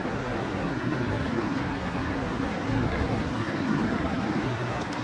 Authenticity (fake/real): fake